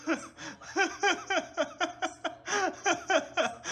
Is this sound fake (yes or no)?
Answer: no